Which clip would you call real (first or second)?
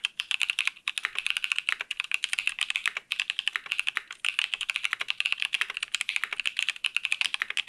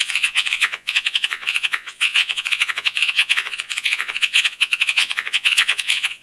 first